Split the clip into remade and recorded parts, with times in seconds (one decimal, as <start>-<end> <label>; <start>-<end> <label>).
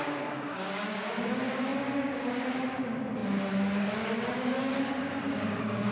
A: 0.0-5.9 remade